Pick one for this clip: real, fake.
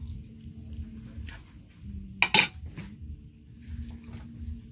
real